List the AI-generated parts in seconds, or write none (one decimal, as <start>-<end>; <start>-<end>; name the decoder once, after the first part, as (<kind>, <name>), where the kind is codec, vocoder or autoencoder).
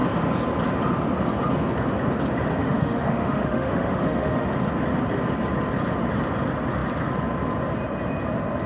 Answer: 2.6-4.5 (autoencoder, DAC-VAE)